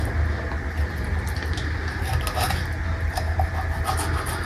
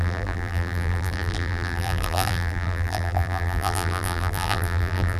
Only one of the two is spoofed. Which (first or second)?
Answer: second